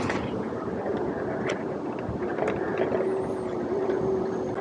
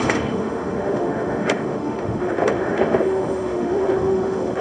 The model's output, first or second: second